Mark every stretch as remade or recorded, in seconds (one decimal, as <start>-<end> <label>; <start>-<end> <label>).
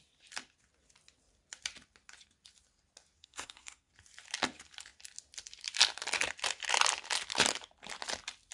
0.0-3.2 recorded; 3.2-3.9 remade; 3.9-8.5 recorded